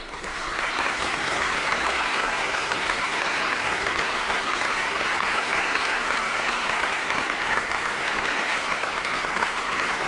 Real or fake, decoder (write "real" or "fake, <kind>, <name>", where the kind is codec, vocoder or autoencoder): fake, codec, SNAC